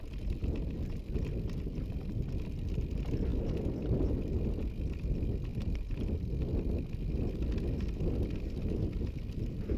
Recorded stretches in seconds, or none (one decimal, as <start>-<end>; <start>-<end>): 0.0-9.8